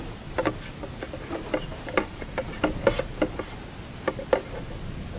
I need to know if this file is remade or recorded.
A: recorded